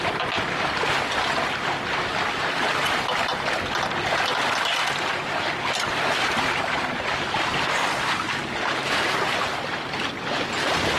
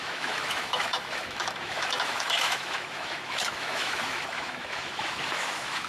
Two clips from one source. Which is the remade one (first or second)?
second